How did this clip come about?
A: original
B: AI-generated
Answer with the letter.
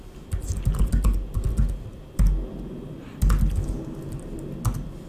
A